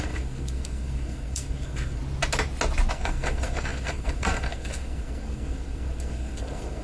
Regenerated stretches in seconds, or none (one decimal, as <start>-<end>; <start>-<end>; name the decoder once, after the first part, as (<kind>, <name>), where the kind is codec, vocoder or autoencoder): 0.0-2.0 (codec, SNAC); 2.9-6.8